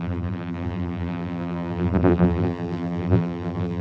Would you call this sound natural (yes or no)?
no